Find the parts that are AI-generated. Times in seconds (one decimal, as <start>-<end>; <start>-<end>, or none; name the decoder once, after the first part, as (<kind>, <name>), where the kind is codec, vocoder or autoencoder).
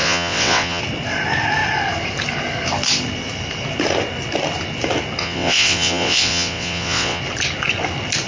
0.0-0.8 (vocoder, WaveNeXt); 5.2-7.2